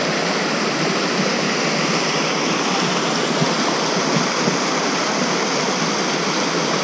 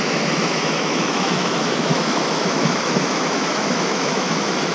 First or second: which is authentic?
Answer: first